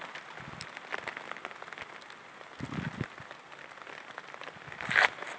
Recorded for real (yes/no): yes